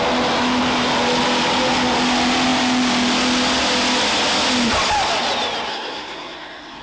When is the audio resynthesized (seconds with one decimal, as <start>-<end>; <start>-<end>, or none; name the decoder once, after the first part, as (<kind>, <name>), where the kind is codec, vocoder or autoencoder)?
5.7-6.8 (codec, SNAC)